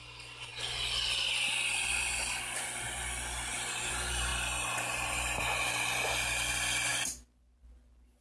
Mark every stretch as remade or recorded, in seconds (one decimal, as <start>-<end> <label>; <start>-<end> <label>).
0.0-8.2 recorded